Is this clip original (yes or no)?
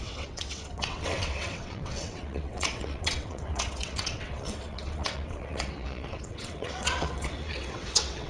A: no